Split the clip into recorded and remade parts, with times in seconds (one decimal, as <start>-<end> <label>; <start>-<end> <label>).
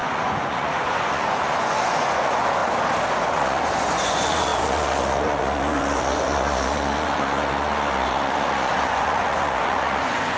0.0-2.6 remade; 2.6-3.2 recorded; 3.2-10.4 remade